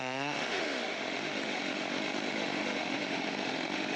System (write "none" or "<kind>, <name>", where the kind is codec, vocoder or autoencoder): autoencoder, DAC-VAE